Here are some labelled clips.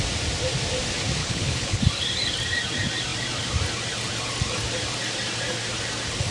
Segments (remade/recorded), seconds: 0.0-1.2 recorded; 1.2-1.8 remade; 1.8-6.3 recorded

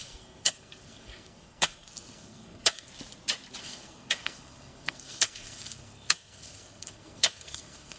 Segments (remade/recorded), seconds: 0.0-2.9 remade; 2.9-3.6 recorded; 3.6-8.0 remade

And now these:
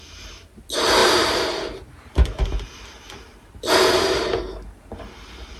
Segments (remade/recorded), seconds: 0.0-1.0 recorded; 1.0-4.4 remade; 4.4-5.6 recorded